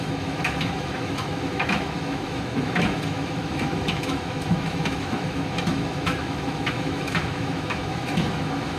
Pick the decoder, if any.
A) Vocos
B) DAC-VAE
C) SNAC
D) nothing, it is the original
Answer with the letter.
B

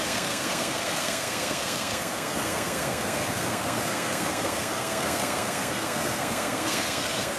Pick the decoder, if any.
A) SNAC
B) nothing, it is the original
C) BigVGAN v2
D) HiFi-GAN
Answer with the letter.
A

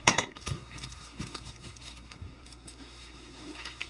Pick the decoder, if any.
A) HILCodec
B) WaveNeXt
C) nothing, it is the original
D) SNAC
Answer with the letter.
D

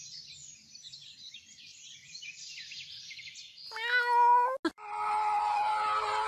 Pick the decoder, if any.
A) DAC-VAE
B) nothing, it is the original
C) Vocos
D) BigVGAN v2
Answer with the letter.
B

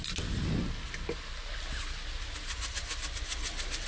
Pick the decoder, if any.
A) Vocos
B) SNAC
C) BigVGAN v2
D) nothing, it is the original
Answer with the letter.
D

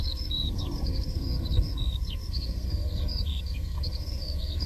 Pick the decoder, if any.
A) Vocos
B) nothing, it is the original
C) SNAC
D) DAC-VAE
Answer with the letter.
C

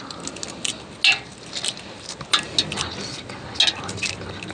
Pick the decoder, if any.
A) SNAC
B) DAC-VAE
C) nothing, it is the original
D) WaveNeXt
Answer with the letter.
C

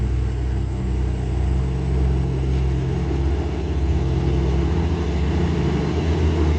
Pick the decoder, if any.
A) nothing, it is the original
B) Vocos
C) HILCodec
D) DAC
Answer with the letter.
A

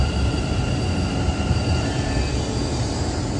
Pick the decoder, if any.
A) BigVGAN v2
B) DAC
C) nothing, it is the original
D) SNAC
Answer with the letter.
C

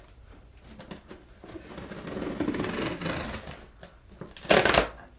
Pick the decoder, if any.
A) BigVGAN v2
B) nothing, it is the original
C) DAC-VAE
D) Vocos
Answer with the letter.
B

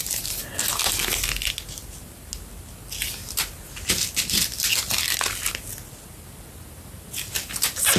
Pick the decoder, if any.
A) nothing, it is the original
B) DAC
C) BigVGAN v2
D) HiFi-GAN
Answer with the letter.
A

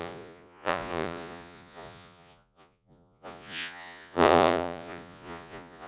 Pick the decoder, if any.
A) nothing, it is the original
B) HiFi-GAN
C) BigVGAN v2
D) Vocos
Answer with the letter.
D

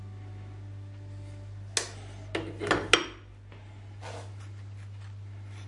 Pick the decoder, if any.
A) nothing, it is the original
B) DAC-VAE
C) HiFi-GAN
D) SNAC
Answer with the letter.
A